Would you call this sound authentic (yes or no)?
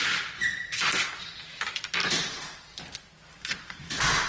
yes